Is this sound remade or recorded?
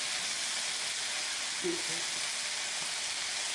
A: recorded